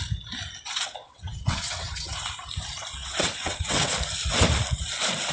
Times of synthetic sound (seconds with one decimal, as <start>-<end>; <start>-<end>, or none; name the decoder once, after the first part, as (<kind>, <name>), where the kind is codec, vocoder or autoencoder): 1.0-2.1 (vocoder, WaveNeXt); 3.0-3.9